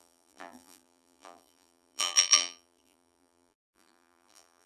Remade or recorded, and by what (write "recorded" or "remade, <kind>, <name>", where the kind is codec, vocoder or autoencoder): remade, vocoder, BigVGAN v2